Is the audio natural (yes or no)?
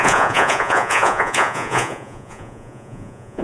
no